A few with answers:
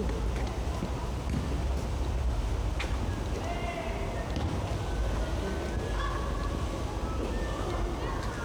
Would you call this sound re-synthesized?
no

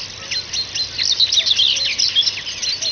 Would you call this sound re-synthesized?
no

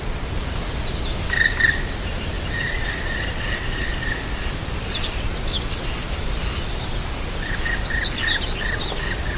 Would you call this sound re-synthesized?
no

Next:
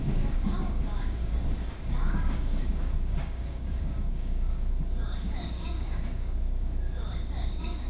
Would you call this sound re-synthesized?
yes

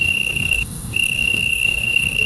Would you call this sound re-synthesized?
yes